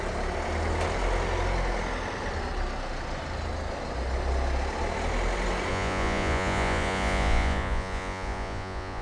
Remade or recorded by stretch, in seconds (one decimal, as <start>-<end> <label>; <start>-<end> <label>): 0.0-5.7 recorded; 5.7-9.0 remade